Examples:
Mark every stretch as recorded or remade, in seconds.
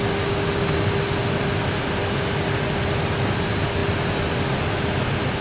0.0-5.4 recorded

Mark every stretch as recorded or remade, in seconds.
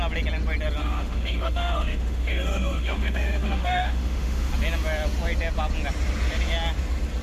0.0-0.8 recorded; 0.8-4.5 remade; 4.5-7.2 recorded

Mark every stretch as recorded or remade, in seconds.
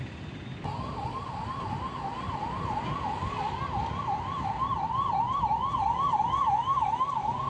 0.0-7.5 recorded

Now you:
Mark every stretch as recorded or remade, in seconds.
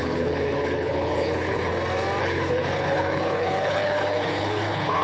0.0-1.7 remade; 1.7-2.2 recorded; 2.2-5.0 remade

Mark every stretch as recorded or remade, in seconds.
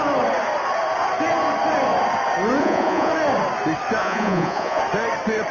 0.0-2.6 recorded; 2.6-3.1 remade; 3.1-4.0 recorded; 4.0-4.8 remade; 4.8-5.5 recorded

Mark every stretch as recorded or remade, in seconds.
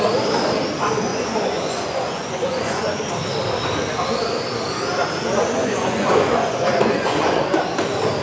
0.0-1.1 recorded; 1.1-3.0 remade; 3.0-5.6 recorded; 5.6-7.4 remade; 7.4-8.2 recorded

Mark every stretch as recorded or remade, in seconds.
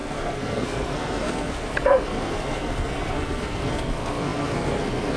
0.0-5.2 remade